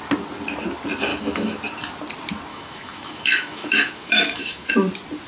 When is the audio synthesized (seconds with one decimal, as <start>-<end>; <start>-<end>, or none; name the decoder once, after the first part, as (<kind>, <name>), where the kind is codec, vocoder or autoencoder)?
1.1-1.6 (autoencoder, DAC-VAE); 2.5-4.7

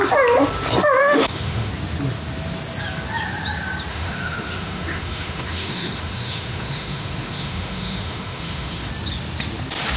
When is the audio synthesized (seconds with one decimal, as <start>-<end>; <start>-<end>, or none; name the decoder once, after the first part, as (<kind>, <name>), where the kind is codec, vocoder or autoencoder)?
1.0-1.7 (autoencoder, DAC-VAE); 3.9-8.9

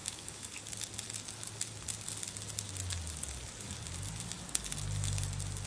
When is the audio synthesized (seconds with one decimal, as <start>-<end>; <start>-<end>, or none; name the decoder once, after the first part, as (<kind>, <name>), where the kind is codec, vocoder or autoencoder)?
0.0-0.7 (codec, DAC)